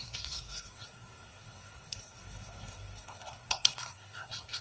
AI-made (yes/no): yes